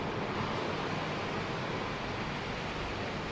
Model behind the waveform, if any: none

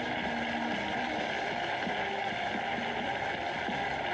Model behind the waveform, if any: none